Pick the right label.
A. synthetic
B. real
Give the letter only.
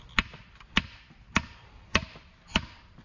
B